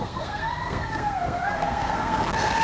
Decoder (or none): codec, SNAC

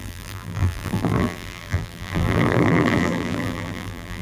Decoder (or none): vocoder, BigVGAN v2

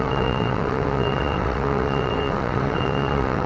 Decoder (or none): vocoder, WaveNeXt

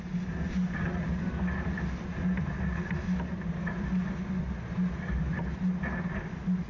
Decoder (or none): none